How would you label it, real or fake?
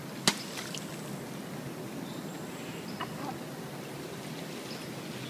real